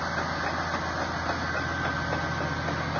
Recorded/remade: recorded